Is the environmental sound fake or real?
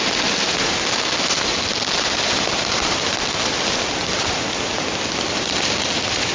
real